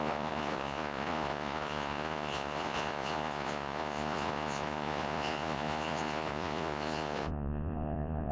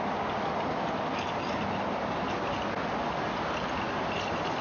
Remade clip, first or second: first